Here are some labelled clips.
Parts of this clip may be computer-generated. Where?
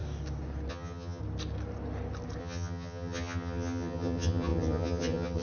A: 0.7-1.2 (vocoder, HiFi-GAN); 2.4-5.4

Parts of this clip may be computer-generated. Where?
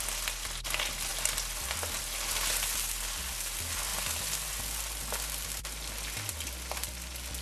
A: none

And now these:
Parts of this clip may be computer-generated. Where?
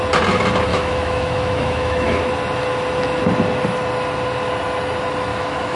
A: 0.7-2.2 (autoencoder, DAC-VAE); 5.3-5.8